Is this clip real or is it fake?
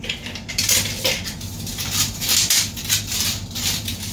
fake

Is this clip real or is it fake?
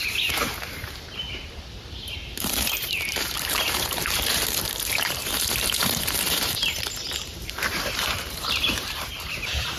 fake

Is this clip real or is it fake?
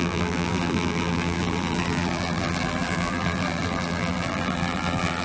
fake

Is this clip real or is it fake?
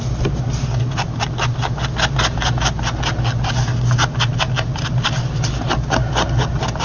real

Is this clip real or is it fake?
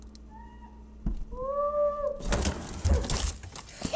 real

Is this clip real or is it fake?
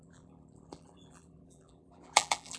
fake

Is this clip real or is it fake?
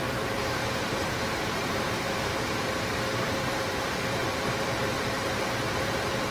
fake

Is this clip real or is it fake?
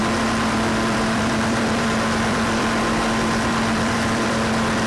fake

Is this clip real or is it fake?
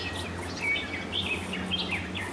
real